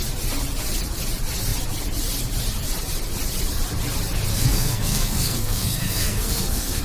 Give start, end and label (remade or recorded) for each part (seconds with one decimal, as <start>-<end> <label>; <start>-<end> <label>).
0.0-4.3 recorded; 4.3-6.8 remade